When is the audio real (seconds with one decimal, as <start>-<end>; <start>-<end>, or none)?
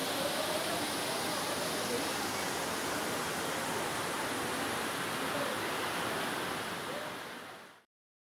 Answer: 0.0-8.3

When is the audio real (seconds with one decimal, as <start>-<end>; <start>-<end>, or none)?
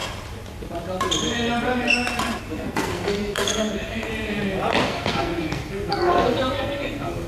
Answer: 0.0-2.4; 4.1-4.8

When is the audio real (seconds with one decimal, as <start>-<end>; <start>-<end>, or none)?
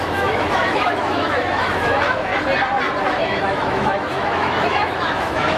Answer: 2.3-3.2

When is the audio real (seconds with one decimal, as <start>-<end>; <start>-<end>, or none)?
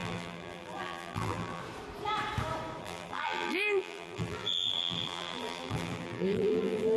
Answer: 1.6-2.8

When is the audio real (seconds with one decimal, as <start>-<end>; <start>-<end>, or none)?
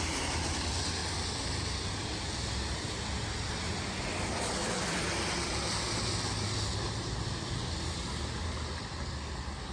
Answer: 0.0-9.7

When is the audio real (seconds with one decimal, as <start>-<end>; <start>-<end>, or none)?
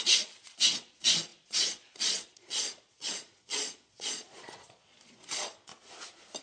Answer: 5.7-6.4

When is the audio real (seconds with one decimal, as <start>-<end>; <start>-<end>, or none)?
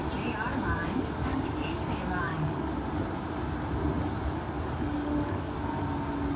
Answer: 0.0-0.5; 2.8-4.0; 5.7-6.4